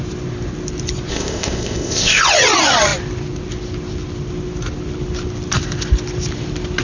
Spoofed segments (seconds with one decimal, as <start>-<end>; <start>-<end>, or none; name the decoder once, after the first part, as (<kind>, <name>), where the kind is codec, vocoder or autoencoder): 1.1-2.2 (codec, ZipCodec)